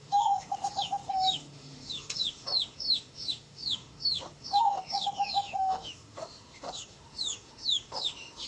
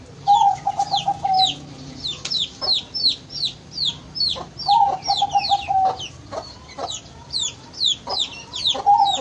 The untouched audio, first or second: second